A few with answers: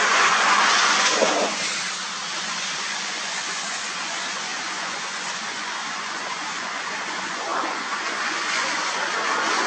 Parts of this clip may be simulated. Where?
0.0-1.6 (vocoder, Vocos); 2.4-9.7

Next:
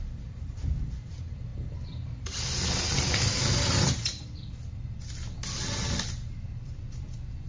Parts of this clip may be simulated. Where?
none

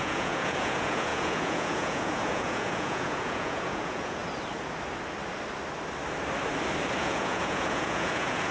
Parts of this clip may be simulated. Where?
0.0-4.2 (vocoder, Vocos); 7.0-8.5

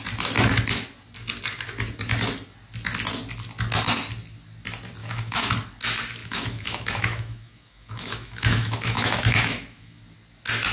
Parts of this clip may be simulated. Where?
5.0-5.5 (autoencoder, DAC-VAE); 6.2-10.0

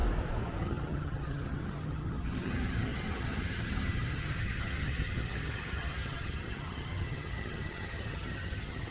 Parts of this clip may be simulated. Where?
0.6-8.9 (vocoder, HiFi-GAN)

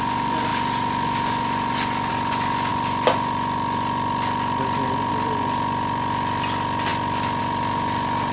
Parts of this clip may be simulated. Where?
none

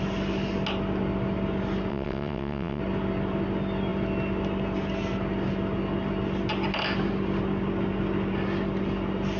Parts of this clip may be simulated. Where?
1.9-2.8 (vocoder, WaveNeXt)

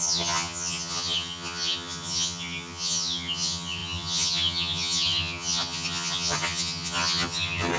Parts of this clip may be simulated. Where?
0.0-7.8 (vocoder, HiFi-GAN)